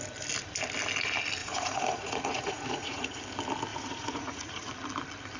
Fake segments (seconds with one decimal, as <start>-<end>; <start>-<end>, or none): 1.4-3.2; 3.7-4.7